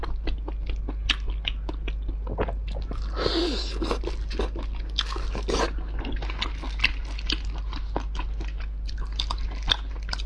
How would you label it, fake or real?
real